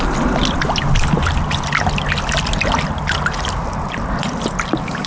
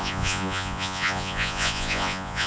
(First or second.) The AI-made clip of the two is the second